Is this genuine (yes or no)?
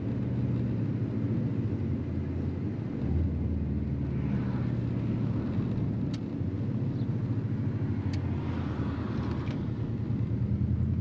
yes